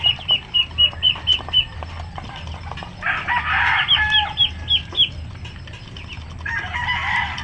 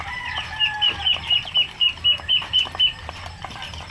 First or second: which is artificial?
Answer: second